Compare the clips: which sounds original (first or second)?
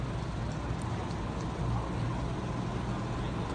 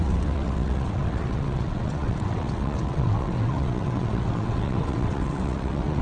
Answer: first